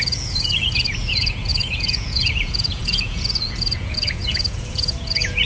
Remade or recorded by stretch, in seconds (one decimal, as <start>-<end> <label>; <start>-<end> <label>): 0.0-5.5 remade